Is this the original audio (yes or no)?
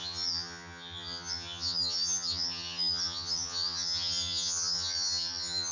no